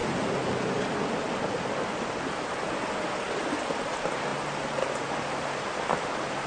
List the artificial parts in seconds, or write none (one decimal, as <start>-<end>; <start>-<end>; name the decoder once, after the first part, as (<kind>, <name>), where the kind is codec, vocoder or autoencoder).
none